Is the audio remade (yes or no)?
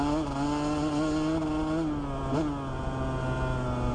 no